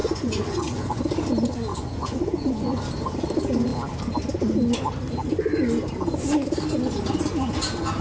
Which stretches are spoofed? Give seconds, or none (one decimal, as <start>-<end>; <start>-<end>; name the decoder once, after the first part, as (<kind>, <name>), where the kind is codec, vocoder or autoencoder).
0.0-1.0 (vocoder, Vocos); 1.7-2.8